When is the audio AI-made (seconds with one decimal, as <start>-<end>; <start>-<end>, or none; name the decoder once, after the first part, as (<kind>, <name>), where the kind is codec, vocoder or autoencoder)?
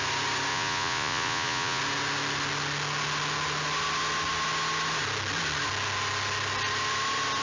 0.5-1.8 (vocoder, Vocos)